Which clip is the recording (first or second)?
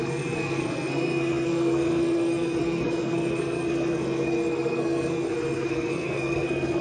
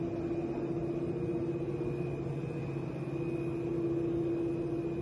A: second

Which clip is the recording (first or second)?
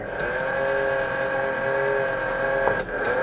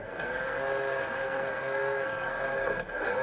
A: first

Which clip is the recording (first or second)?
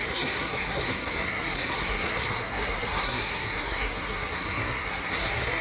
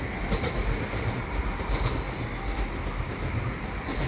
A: second